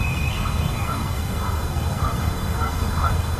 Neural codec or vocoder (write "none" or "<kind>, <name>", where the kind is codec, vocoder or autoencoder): codec, SNAC